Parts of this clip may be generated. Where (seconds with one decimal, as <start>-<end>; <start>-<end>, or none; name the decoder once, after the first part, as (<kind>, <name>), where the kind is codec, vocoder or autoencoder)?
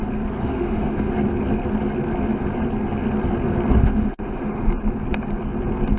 0.4-1.1 (autoencoder, DAC-VAE); 3.8-4.7